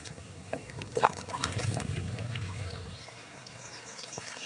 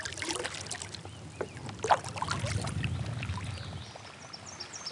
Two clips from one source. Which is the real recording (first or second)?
second